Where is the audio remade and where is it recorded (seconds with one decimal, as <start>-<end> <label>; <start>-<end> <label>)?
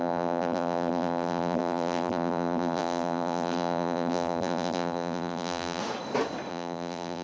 0.0-5.8 remade; 5.8-6.5 recorded; 6.5-7.2 remade